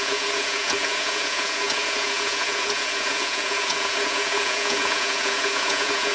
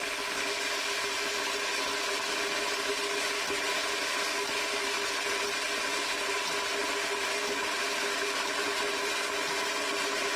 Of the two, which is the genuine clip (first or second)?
second